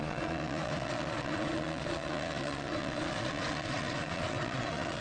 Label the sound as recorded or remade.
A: remade